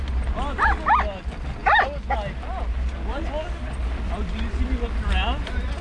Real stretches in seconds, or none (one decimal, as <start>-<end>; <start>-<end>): 0.0-5.8

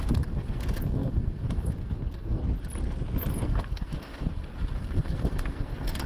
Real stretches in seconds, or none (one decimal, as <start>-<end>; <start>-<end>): 2.4-3.3

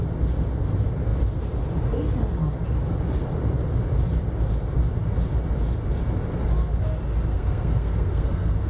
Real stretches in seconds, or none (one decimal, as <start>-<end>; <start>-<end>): 0.0-7.3

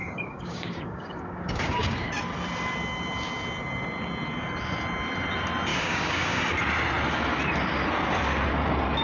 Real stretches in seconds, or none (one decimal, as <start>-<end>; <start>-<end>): 2.1-5.7; 6.4-9.0

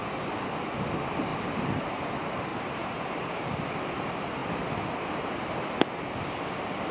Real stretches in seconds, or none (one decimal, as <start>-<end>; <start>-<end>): 0.0-2.5; 3.5-6.9

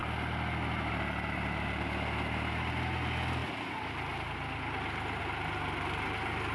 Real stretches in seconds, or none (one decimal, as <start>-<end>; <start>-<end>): 0.0-6.5